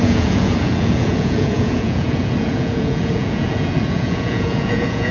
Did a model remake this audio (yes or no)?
yes